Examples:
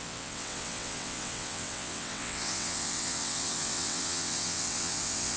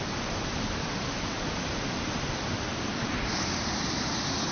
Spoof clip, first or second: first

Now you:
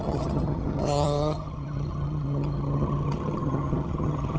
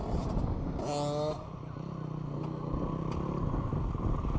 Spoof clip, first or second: first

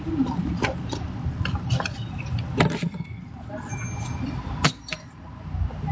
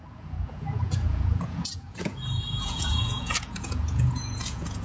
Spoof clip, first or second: second